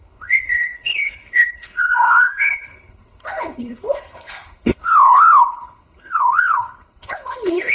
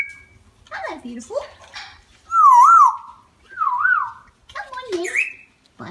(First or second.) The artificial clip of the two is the first